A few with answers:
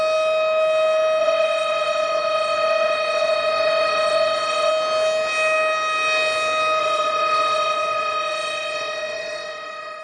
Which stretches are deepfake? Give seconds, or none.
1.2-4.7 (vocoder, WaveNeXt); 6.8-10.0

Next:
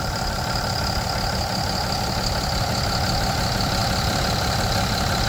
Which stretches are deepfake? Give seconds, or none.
none

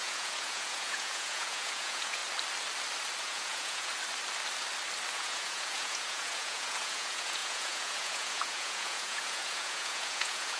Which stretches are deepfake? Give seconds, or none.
0.0-2.2 (vocoder, Vocos); 3.2-3.9; 5.1-10.6

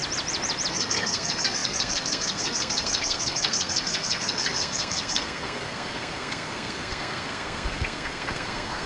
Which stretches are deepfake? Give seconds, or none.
0.7-8.9 (codec, SNAC)

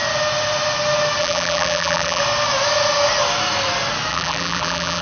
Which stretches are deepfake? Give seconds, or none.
1.2-2.2 (vocoder, BigVGAN v2); 4.1-5.0

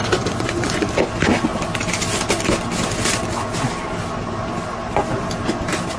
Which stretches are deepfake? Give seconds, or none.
0.0-0.9 (vocoder, Vocos)